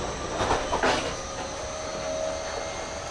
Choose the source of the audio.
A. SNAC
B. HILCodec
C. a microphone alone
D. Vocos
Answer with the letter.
C